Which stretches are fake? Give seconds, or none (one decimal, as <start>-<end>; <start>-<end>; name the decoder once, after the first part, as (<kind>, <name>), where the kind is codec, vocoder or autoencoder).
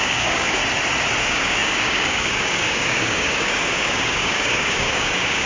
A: 0.0-0.6 (codec, DAC); 1.2-5.5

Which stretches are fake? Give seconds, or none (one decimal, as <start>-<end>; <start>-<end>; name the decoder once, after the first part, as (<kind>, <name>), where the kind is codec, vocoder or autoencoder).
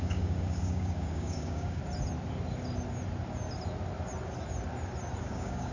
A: 0.0-1.8 (codec, DAC); 5.2-5.7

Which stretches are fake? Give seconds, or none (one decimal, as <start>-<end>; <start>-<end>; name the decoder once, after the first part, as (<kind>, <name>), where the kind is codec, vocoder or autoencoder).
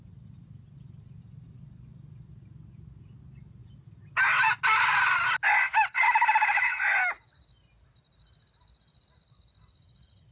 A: none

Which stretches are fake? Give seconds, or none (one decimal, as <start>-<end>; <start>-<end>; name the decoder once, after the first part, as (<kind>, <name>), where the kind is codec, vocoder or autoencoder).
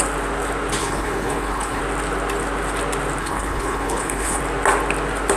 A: 0.8-1.8 (codec, HILCodec); 3.2-4.4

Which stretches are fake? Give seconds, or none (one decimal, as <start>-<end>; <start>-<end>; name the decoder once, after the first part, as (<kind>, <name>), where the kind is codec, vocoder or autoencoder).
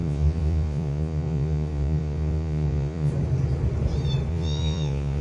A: 0.0-3.1 (vocoder, Vocos); 4.3-5.2